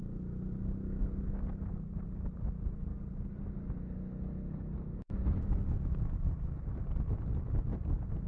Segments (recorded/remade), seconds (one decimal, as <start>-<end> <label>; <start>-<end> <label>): 0.0-8.3 recorded